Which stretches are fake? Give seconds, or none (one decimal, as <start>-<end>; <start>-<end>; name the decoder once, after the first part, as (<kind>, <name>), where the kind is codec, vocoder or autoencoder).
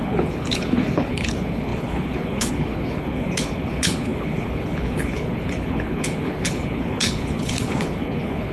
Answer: 0.0-8.5 (codec, HILCodec)